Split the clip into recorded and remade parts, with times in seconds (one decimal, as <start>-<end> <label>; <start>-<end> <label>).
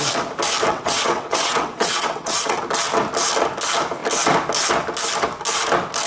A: 0.0-0.7 recorded; 0.7-2.6 remade; 2.6-6.1 recorded